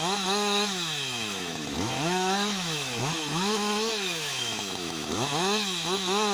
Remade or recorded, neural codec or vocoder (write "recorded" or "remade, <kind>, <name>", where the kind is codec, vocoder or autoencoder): remade, autoencoder, DAC-VAE